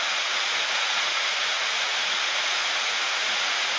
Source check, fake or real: fake